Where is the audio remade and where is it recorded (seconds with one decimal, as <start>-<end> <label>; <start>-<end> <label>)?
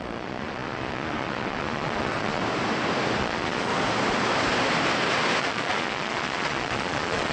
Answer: 0.0-2.4 remade; 2.4-3.2 recorded; 3.2-3.7 remade; 3.7-5.4 recorded; 5.4-7.3 remade